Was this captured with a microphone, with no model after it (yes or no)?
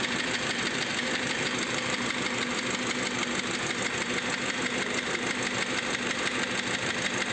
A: no